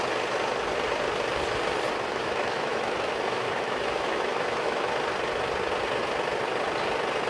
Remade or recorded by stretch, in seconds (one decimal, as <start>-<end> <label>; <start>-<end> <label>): 0.0-2.1 recorded; 2.1-4.9 remade; 4.9-7.3 recorded